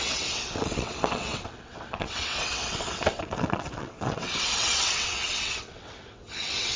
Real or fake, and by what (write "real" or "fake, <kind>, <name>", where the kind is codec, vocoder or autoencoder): fake, vocoder, WaveNeXt